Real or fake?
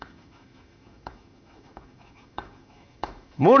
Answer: fake